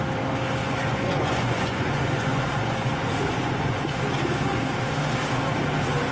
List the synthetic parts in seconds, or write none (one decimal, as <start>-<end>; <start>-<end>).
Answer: 0.6-3.8

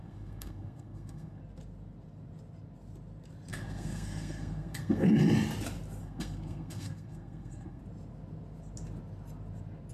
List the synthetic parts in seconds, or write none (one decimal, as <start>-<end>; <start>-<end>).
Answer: 0.0-1.4; 3.5-5.1; 6.0-7.8

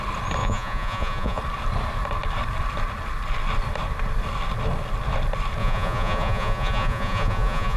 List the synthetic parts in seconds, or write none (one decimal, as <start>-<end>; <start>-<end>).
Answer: 0.4-1.4; 5.6-7.8

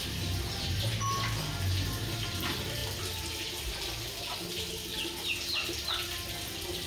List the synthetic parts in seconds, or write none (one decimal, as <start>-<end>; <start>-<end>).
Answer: none

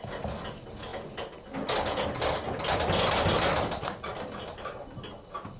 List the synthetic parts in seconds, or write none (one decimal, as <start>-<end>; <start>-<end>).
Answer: none